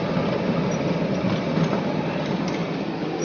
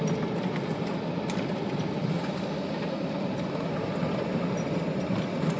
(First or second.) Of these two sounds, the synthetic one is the second